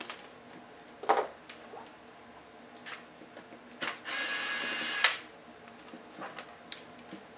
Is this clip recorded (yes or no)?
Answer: yes